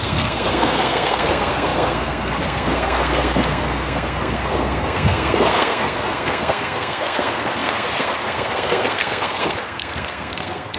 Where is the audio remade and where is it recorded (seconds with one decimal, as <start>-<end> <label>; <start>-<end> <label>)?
0.0-10.8 remade